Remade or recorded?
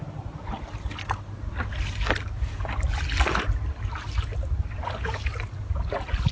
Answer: recorded